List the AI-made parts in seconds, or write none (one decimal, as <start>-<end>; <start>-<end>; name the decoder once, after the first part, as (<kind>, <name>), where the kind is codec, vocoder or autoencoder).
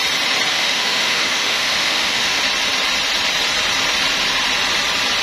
0.5-2.4 (autoencoder, DAC-VAE)